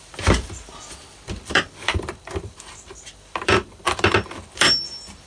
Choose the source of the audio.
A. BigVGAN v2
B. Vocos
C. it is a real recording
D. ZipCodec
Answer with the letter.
A